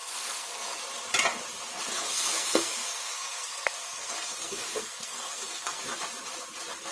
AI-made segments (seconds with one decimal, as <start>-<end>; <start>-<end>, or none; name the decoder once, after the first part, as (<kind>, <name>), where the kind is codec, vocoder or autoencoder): 0.0-0.8 (codec, SNAC); 1.9-5.8